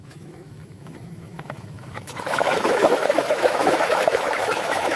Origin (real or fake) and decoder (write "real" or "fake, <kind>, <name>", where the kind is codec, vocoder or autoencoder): fake, autoencoder, DAC-VAE